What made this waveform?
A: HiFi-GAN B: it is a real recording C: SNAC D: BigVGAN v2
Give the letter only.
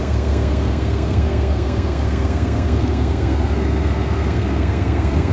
C